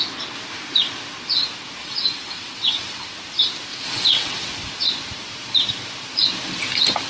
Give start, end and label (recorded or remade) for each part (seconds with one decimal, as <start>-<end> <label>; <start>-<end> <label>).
0.0-1.8 recorded; 1.8-3.0 remade; 3.0-3.7 recorded; 3.7-4.5 remade; 4.5-7.1 recorded